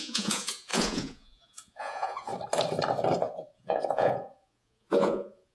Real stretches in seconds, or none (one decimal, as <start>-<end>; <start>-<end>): 2.3-3.2